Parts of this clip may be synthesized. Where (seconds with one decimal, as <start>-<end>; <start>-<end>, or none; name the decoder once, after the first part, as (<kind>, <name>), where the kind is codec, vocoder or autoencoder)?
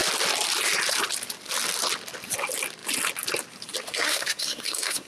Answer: 3.9-5.1 (codec, SNAC)